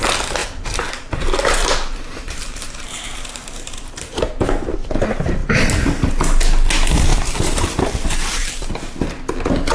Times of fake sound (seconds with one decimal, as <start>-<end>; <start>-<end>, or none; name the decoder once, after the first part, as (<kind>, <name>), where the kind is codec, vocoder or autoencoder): 0.4-4.9 (vocoder, BigVGAN v2); 7.1-9.0